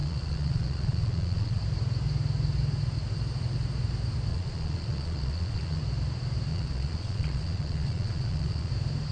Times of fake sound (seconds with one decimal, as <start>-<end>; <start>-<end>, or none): 0.0-1.6; 4.3-5.8; 6.5-8.7